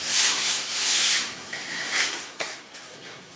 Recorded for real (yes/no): no